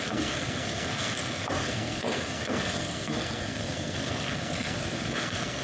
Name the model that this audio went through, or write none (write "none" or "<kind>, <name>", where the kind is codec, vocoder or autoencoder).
codec, SNAC